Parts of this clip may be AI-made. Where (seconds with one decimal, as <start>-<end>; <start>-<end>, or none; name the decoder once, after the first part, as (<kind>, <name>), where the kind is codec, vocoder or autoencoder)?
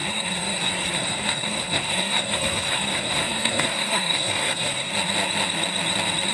0.0-4.9 (codec, SNAC)